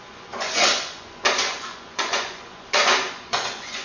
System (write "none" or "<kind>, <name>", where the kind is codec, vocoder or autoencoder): vocoder, Vocos